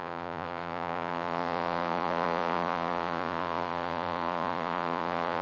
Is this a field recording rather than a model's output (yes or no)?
no